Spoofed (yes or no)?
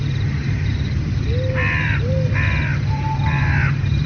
no